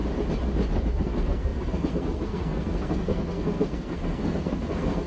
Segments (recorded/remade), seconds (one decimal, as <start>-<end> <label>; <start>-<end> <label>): 0.0-0.9 recorded; 0.9-5.1 remade